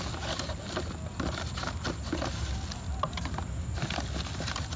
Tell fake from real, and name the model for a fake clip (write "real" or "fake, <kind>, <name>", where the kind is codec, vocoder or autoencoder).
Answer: real